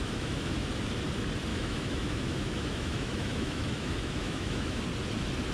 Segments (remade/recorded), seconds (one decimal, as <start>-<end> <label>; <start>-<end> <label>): 0.0-0.7 remade; 0.7-1.5 recorded; 1.5-4.8 remade; 4.8-5.5 recorded